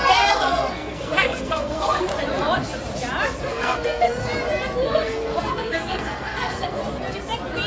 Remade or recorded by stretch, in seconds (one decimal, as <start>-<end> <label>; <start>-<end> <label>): 0.0-2.1 remade; 2.1-3.4 recorded; 3.4-4.2 remade; 4.2-4.8 recorded; 4.8-6.8 remade; 6.8-7.7 recorded